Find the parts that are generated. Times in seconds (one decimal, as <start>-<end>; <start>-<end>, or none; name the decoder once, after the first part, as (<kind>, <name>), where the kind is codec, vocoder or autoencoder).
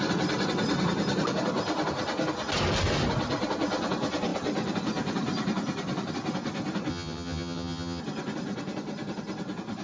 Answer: 6.9-8.0 (vocoder, HiFi-GAN)